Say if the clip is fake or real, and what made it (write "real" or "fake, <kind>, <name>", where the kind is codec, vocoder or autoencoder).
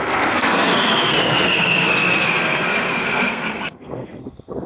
fake, codec, SNAC